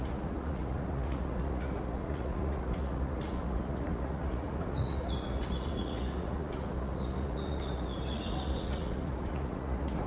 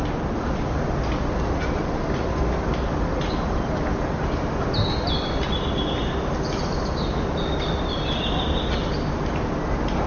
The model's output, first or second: first